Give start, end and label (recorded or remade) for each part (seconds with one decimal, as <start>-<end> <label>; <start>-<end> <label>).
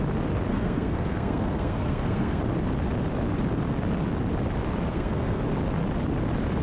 0.0-0.5 recorded; 0.5-2.4 remade; 2.4-4.9 recorded; 4.9-5.4 remade; 5.4-6.6 recorded